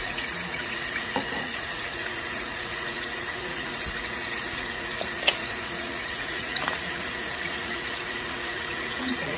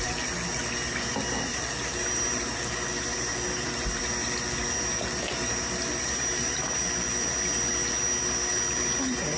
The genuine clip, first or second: second